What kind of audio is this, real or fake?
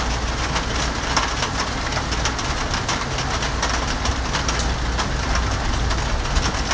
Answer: real